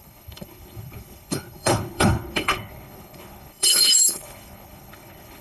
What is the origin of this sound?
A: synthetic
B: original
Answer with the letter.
A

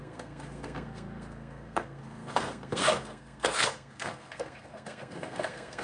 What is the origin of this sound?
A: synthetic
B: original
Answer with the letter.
A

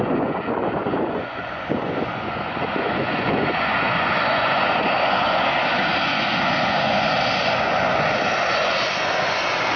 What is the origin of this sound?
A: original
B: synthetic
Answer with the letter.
B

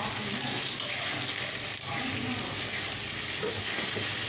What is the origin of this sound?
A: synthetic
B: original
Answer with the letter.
B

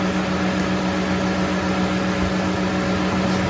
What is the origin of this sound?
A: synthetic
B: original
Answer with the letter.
B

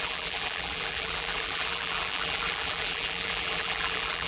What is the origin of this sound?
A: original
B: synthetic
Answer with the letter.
B